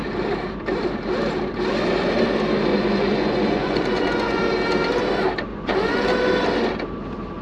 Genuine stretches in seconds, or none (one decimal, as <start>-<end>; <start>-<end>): 0.0-2.7; 4.4-5.5; 6.1-7.4

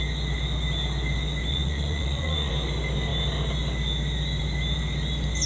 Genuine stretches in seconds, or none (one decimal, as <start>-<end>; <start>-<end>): 0.0-1.5; 2.5-5.5

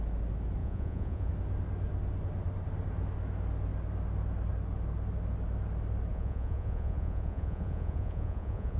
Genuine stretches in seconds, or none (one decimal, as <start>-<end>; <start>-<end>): 0.0-0.6; 1.3-6.1

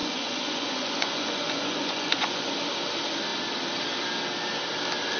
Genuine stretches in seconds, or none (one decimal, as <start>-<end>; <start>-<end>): 2.5-5.2

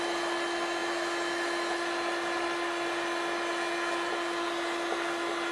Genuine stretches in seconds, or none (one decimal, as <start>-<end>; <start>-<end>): 0.0-5.5

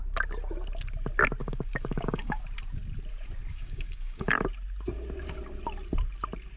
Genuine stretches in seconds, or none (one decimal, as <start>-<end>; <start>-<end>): 0.0-1.4; 2.4-3.5; 4.3-6.6